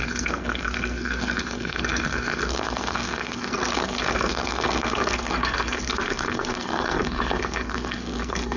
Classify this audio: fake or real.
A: fake